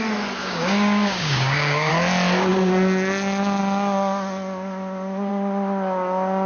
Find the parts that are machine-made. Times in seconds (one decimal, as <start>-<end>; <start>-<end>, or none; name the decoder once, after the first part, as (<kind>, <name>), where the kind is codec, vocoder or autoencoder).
0.4-1.9 (codec, DAC)